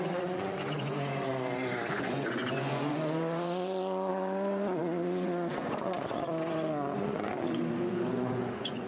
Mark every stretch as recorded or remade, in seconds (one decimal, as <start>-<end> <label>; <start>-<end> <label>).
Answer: 0.0-1.3 remade; 1.3-1.9 recorded; 1.9-8.9 remade